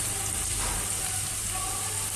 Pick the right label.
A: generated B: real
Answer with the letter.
B